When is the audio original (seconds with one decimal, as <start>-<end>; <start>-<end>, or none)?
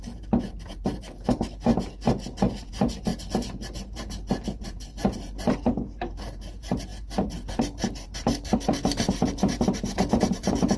1.7-2.7; 3.1-3.7